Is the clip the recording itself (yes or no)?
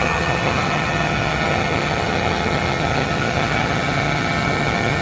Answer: no